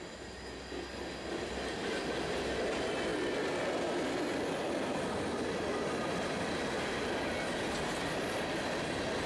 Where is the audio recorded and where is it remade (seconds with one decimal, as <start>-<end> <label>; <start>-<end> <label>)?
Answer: 0.0-9.3 recorded

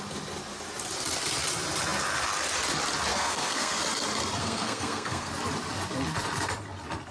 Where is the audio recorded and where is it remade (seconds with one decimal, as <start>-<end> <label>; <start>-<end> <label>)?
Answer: 0.0-3.1 recorded; 3.1-3.8 remade; 3.8-4.4 recorded; 4.4-5.3 remade; 5.3-7.1 recorded

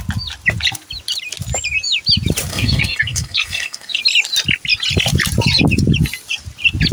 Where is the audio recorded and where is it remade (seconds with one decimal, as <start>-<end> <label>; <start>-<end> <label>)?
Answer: 0.0-2.5 recorded; 2.5-4.0 remade; 4.0-6.9 recorded